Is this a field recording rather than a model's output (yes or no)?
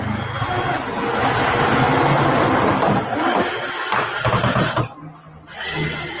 yes